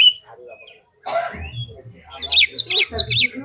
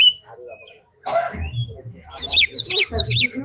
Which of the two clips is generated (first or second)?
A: second